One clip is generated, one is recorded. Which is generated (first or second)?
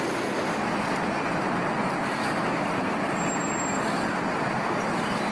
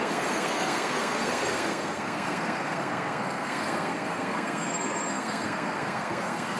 second